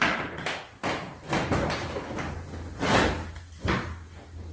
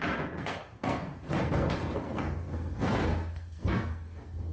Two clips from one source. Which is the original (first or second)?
first